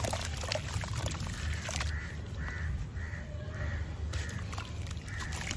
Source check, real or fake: fake